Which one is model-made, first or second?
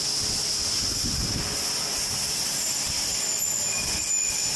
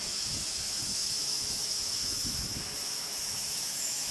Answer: second